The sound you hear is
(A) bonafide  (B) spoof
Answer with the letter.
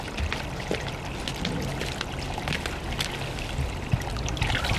A